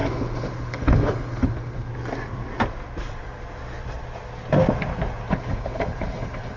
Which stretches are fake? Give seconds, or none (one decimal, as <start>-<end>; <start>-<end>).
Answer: 0.0-1.9; 5.3-6.6

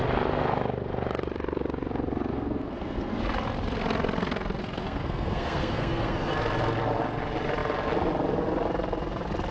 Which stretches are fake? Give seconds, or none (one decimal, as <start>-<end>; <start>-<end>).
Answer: 2.3-3.2; 4.6-6.3

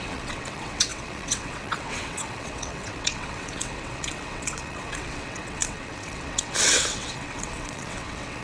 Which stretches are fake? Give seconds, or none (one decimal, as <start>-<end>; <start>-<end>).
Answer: 0.0-8.4

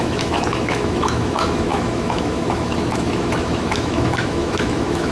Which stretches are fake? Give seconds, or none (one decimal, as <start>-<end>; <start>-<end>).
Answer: 0.0-5.1

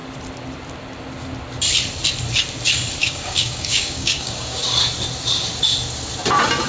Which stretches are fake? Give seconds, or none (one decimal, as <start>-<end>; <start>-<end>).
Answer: 3.0-4.6